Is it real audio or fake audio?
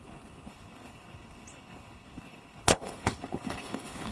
fake